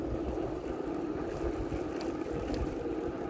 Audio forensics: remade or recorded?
recorded